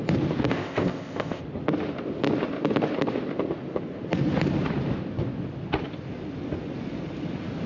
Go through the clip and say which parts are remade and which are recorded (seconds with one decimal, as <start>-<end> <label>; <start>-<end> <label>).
0.0-0.5 recorded; 0.5-1.4 remade; 1.4-7.7 recorded